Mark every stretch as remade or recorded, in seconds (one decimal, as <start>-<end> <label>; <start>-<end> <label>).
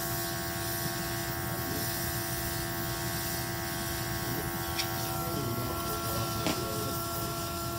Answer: 0.0-6.5 recorded; 6.5-7.8 remade